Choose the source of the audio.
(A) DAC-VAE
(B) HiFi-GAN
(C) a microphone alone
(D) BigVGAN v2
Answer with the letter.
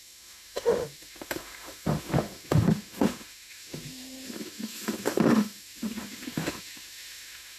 A